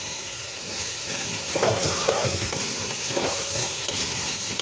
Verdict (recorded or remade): remade